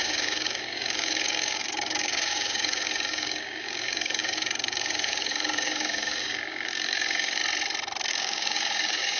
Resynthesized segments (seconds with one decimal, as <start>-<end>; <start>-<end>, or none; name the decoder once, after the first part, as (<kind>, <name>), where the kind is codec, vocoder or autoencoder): 0.0-7.4 (codec, DAC); 8.1-9.2